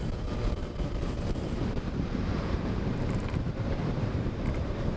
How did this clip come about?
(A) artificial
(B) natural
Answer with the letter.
A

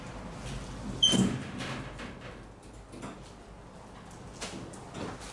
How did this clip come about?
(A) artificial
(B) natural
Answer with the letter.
B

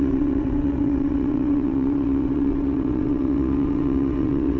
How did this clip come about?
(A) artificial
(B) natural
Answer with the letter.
A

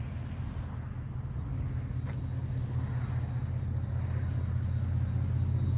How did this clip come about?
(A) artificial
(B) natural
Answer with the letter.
B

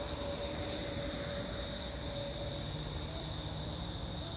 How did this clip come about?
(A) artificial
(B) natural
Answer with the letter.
B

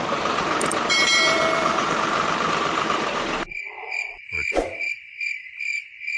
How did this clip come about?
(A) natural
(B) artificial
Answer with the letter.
B